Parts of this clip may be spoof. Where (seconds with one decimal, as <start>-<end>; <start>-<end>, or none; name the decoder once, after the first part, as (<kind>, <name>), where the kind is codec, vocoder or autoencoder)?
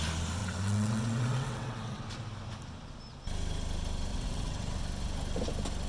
0.4-2.0 (vocoder, WaveNeXt); 4.1-4.8